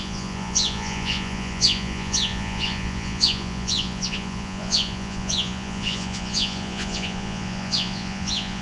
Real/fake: fake